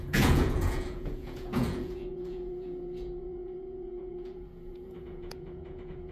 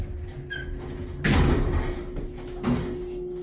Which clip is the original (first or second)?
second